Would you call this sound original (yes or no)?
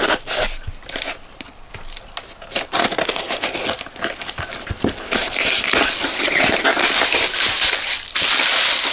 yes